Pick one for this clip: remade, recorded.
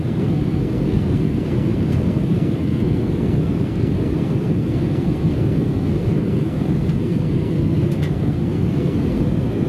remade